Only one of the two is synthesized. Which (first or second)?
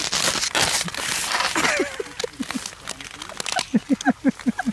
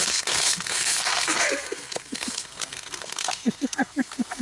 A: second